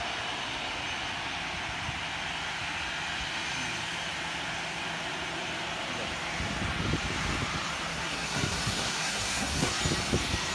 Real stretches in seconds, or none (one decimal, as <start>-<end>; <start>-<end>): 0.0-7.9; 9.8-10.5

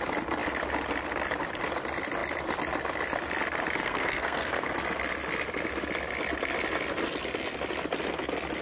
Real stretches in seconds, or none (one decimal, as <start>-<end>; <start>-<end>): 0.0-3.8; 4.7-8.6

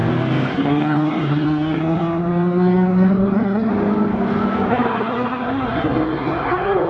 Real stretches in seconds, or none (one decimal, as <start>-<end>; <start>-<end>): 0.0-0.5; 3.7-4.7

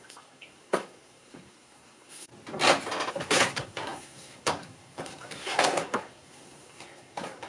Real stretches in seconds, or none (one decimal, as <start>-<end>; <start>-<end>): 2.3-3.1

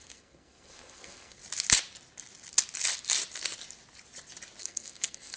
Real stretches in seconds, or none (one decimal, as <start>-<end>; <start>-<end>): 1.4-4.6

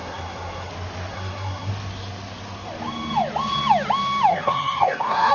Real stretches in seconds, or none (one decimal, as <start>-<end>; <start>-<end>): 0.7-1.1; 1.7-4.3

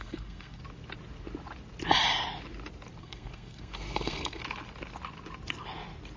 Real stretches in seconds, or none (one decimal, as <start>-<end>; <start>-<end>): 0.6-3.0; 4.4-6.2

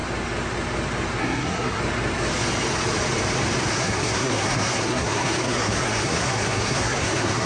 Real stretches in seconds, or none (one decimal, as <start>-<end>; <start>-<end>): 0.0-1.2; 1.8-3.7